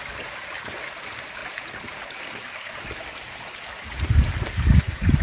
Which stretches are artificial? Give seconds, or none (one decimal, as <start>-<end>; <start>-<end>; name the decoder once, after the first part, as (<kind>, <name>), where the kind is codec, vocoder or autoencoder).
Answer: none